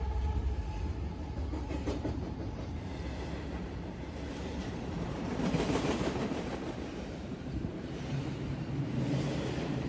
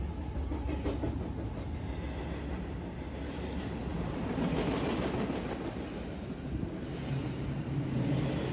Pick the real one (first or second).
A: second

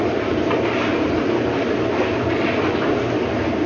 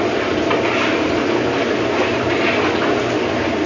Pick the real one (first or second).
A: second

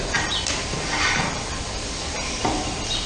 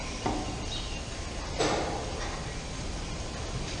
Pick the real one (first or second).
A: second